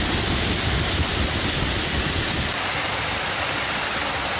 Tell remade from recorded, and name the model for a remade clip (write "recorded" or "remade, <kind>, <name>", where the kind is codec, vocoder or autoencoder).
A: recorded